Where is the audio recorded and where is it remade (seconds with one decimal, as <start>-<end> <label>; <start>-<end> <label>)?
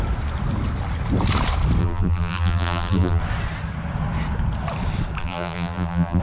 0.0-1.8 recorded; 1.8-3.2 remade; 3.2-5.2 recorded; 5.2-6.2 remade